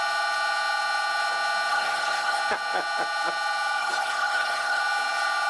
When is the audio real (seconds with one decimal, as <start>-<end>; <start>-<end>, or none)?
0.0-1.7; 2.4-3.8; 4.8-5.5